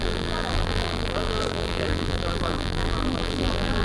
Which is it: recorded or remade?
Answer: remade